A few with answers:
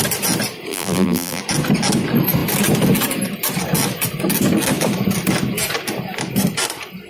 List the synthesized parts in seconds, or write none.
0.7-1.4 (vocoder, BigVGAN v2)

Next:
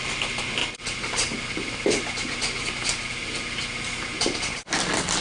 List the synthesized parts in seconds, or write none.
0.0-5.2 (vocoder, BigVGAN v2)

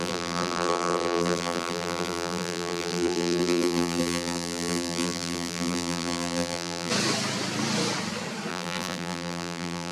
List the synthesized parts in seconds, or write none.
0.0-6.9 (vocoder, BigVGAN v2); 8.5-9.9

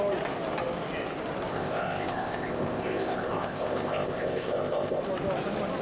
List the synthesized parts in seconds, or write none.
1.5-5.0 (codec, ZipCodec)

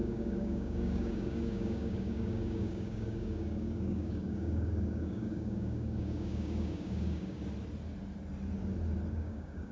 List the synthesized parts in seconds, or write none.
0.0-7.4 (codec, DAC); 9.1-9.7